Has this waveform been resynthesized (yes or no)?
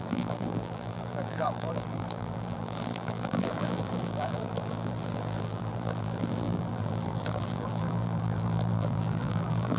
yes